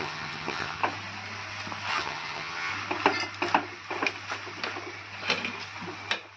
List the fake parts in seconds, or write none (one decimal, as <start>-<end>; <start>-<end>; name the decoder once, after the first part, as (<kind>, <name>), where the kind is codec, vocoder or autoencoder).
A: 0.0-0.8 (vocoder, HiFi-GAN); 1.9-2.7